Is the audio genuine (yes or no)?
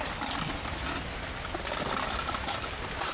yes